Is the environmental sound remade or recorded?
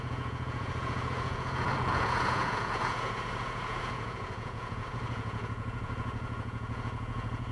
remade